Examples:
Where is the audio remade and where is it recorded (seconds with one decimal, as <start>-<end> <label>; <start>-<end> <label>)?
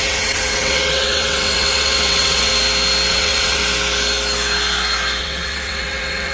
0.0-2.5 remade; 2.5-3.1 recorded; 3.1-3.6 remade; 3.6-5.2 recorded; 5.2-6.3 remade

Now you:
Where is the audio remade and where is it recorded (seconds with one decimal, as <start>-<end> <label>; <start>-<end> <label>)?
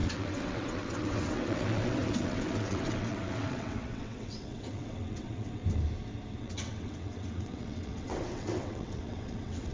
0.0-5.6 remade; 5.6-6.4 recorded; 6.4-9.7 remade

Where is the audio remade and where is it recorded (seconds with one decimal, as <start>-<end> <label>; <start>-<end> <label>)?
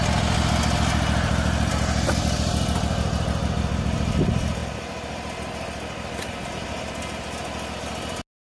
0.0-8.5 recorded